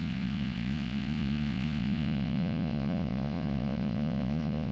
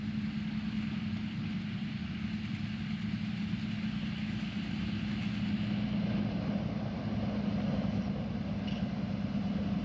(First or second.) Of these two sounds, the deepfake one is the first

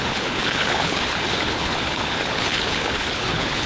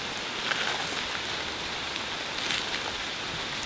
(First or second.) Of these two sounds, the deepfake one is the first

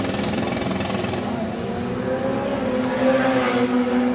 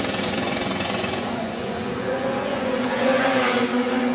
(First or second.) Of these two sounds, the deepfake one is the second